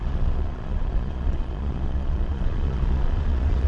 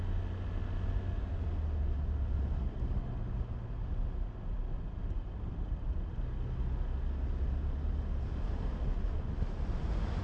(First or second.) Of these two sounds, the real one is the second